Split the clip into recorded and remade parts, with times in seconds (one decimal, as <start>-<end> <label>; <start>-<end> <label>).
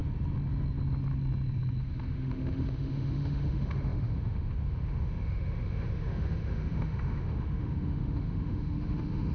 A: 0.0-1.8 recorded; 1.8-9.3 remade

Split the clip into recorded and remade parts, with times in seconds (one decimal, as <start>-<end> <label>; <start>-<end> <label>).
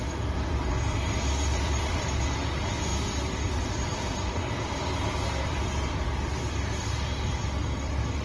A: 0.0-2.9 remade; 2.9-3.5 recorded; 3.5-8.2 remade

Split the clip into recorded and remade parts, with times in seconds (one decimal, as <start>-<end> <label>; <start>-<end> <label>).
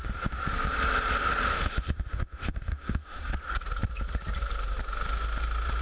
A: 0.0-1.5 recorded; 1.5-3.3 remade; 3.3-5.8 recorded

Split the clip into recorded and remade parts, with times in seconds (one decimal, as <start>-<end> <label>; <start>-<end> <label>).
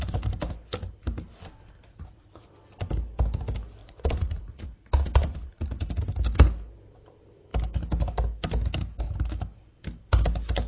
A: 0.0-3.8 recorded; 3.8-6.0 remade; 6.0-10.7 recorded